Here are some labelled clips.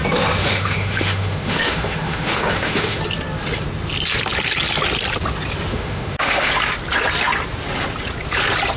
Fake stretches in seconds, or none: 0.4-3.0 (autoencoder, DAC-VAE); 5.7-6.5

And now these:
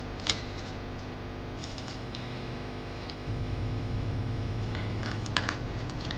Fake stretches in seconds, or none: 1.6-5.3 (autoencoder, DAC-VAE)

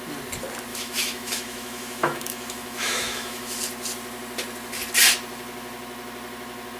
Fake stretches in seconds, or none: 0.7-3.6 (autoencoder, DAC-VAE)

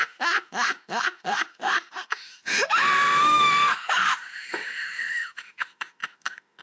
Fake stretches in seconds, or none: 0.0-6.6 (autoencoder, DAC-VAE)

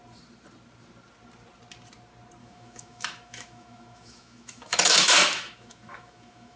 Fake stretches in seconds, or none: 2.4-6.6 (autoencoder, DAC-VAE)

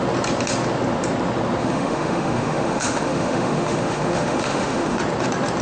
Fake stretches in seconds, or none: 1.6-5.0 (autoencoder, DAC-VAE)

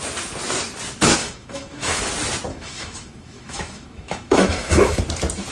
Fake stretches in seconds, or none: 1.2-2.0 (autoencoder, DAC-VAE); 2.5-5.0

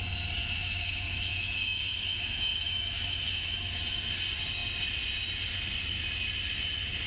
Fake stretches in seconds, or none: 0.4-3.8 (autoencoder, DAC-VAE)